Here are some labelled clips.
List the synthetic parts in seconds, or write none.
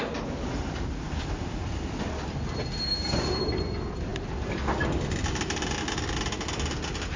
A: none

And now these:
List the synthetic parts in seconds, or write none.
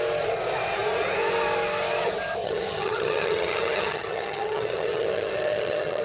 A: 2.4-6.0 (vocoder, HiFi-GAN)